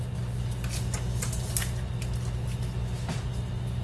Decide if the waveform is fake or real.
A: real